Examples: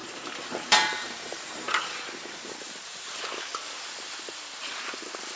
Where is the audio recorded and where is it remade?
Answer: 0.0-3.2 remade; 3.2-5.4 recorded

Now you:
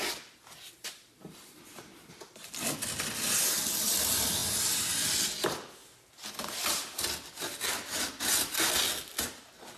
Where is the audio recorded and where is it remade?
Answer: 0.0-1.2 recorded; 1.2-1.9 remade; 1.9-9.8 recorded

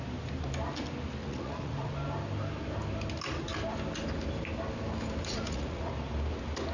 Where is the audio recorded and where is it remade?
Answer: 0.0-1.2 recorded; 1.2-1.9 remade; 1.9-5.3 recorded; 5.3-5.9 remade; 5.9-6.7 recorded

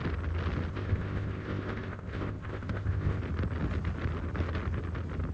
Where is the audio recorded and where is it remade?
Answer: 0.0-0.7 recorded; 0.7-3.2 remade; 3.2-5.3 recorded

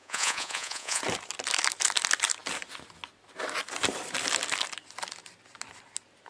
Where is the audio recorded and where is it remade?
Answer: 0.0-1.0 remade; 1.0-6.3 recorded

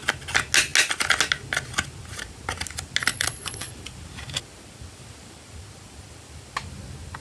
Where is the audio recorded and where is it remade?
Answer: 0.0-3.0 recorded; 3.0-3.7 remade; 3.7-7.2 recorded